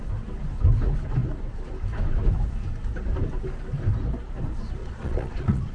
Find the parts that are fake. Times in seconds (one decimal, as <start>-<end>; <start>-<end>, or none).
4.8-5.7